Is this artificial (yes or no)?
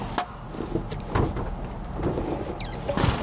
no